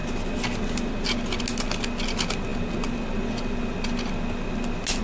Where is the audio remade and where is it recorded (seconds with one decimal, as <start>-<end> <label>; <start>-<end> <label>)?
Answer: 0.0-5.0 recorded